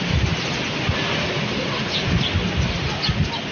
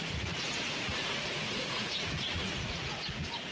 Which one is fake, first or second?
second